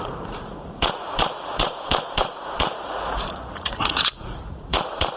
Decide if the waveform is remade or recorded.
remade